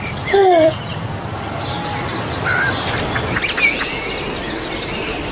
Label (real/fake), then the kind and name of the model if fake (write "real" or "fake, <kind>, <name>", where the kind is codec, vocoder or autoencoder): real